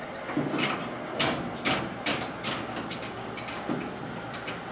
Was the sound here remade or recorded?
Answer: recorded